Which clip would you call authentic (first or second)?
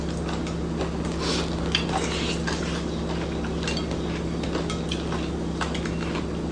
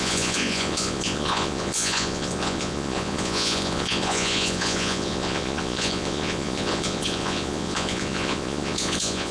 first